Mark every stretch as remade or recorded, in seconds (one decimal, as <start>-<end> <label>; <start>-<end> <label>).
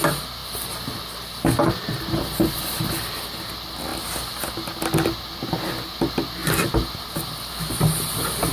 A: 0.0-0.4 recorded; 0.4-1.7 remade; 1.7-8.5 recorded